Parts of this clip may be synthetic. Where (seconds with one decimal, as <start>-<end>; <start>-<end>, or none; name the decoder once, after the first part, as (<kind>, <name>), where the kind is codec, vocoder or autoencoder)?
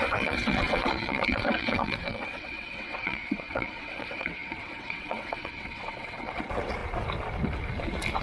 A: 0.0-6.8 (vocoder, WaveNeXt)